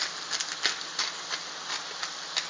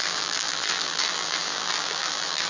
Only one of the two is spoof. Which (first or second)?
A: second